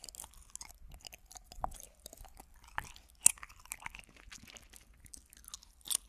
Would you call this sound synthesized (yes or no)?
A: no